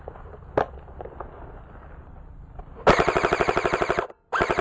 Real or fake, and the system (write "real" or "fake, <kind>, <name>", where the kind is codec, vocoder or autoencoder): real